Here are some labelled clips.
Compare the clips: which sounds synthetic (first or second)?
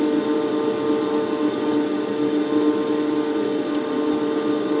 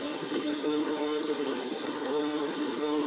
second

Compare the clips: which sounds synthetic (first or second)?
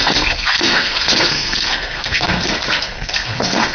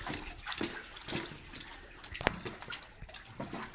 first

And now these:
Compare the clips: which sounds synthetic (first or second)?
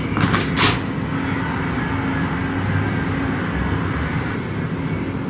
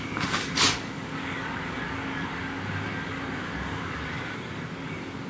second